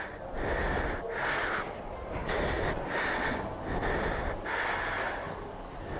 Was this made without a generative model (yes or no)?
yes